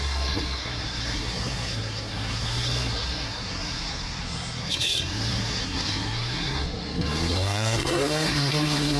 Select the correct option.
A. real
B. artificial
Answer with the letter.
B